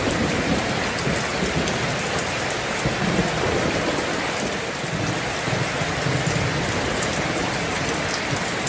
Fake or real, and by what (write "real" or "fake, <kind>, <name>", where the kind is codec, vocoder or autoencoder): real